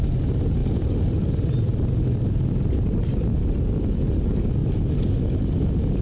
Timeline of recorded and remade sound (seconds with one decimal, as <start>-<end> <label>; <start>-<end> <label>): 0.0-0.6 recorded; 0.6-2.5 remade; 2.5-3.3 recorded; 3.3-3.8 remade; 3.8-4.6 recorded; 4.6-5.2 remade; 5.2-6.0 recorded